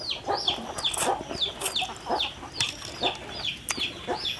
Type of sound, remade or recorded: recorded